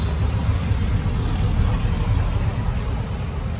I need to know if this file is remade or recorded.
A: recorded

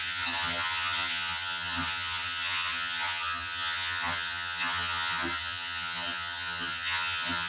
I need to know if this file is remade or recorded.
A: remade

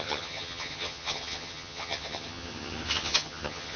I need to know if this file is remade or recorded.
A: remade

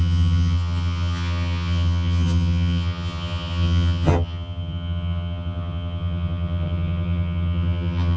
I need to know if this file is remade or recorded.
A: remade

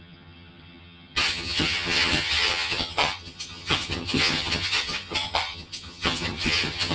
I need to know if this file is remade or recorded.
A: remade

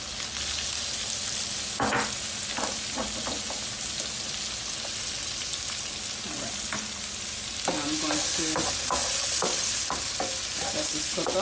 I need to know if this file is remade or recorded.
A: recorded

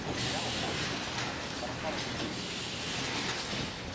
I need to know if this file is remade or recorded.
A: recorded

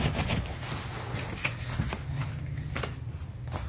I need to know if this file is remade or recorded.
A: recorded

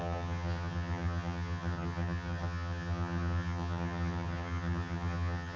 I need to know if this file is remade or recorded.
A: remade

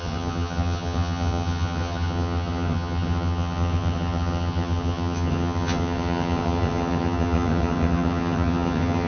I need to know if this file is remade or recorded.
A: remade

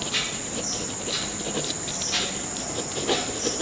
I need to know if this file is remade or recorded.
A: recorded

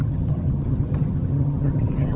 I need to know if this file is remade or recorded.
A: remade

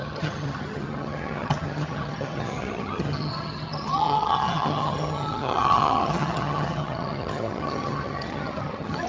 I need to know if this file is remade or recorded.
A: remade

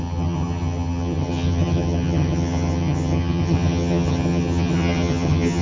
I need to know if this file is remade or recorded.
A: remade